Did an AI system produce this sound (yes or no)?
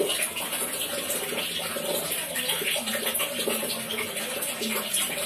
no